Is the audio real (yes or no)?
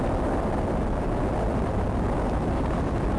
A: yes